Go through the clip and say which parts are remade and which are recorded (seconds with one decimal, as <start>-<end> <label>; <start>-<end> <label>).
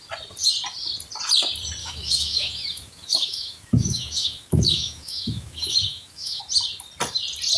0.0-1.8 recorded; 1.8-6.4 remade; 6.4-7.6 recorded